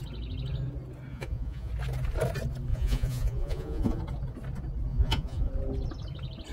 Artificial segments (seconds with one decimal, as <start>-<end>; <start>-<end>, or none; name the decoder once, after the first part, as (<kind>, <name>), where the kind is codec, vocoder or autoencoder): 1.1-1.7 (vocoder, Vocos); 2.7-4.0; 4.9-5.5